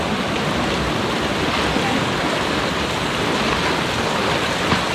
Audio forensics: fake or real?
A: real